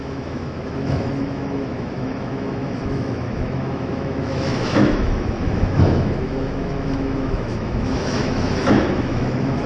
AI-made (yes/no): yes